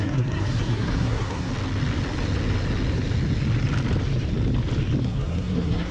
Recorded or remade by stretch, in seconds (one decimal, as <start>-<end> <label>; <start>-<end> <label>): 0.0-1.5 remade; 1.5-5.0 recorded; 5.0-5.9 remade